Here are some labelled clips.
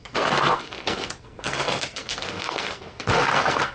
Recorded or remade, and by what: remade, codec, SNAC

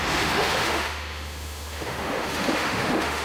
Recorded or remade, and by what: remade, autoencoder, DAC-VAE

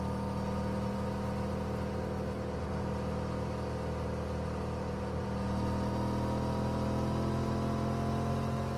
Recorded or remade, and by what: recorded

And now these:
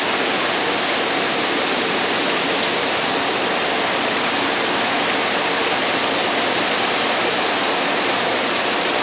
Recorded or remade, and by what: recorded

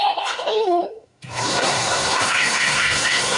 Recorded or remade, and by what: remade, codec, SNAC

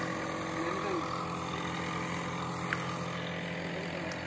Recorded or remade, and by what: recorded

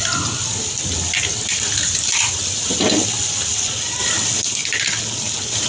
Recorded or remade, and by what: recorded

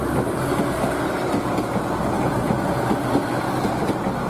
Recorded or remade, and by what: recorded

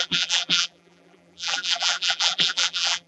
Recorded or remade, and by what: remade, vocoder, BigVGAN v2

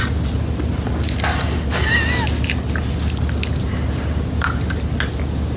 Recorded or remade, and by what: recorded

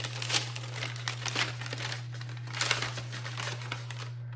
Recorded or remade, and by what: recorded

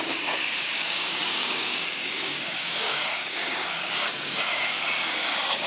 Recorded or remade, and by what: remade, codec, DAC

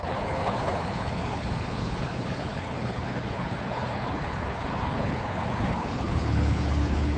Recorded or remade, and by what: remade, codec, HILCodec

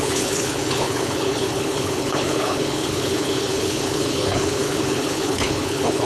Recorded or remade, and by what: remade, codec, HILCodec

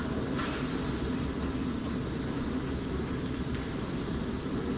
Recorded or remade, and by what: recorded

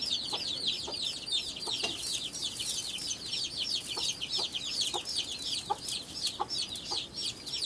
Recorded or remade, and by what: recorded